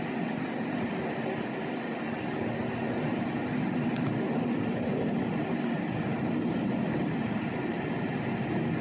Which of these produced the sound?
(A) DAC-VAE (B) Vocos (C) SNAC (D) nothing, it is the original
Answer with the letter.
D